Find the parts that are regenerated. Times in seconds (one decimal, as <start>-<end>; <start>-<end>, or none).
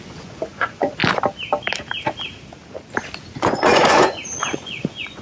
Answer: 0.0-1.0; 3.4-5.2